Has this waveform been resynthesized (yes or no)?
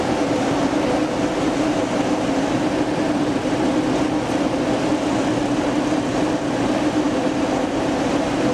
no